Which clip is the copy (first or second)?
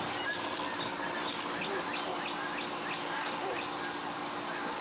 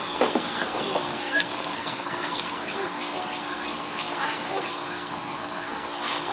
second